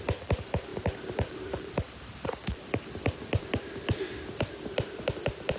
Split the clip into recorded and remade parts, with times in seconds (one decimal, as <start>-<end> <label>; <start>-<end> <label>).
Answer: 0.0-5.6 recorded